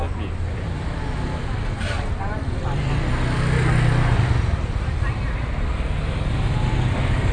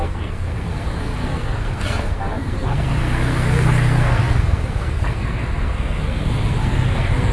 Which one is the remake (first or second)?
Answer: second